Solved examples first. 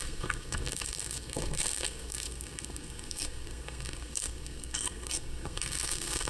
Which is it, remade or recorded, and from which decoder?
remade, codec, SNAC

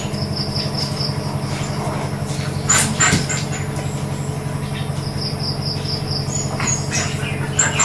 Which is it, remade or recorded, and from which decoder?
recorded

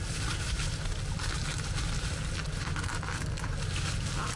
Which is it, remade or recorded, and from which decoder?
recorded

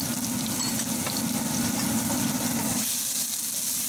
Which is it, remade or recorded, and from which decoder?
recorded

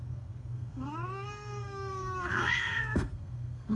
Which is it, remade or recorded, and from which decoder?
remade, codec, SNAC